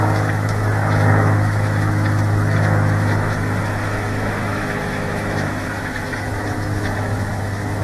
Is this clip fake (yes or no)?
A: yes